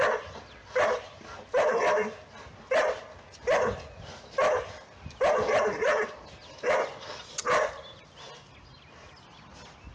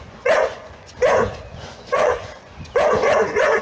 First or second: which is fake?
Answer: second